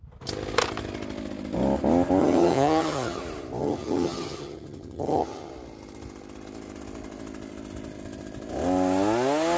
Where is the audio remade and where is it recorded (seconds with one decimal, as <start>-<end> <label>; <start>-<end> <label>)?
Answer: 0.0-2.2 recorded; 2.2-3.2 remade; 3.2-3.6 recorded; 3.6-5.5 remade; 5.5-9.6 recorded